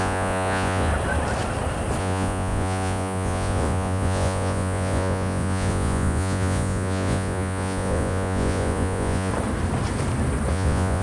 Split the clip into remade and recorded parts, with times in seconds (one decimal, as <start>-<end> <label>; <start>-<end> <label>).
0.0-0.9 remade; 0.9-2.0 recorded; 2.0-9.3 remade; 9.3-10.5 recorded; 10.5-11.0 remade